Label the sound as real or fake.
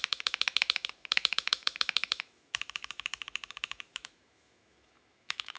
fake